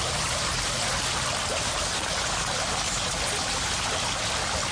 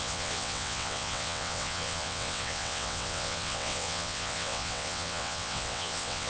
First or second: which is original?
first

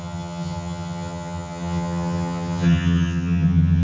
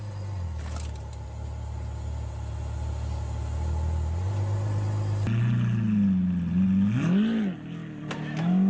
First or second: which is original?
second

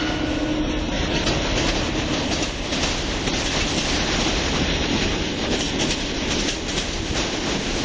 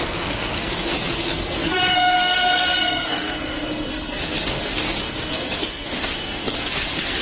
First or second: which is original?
first